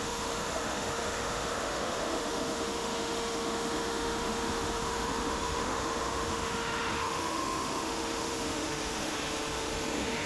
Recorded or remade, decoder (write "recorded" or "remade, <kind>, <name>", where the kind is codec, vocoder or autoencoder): remade, autoencoder, DAC-VAE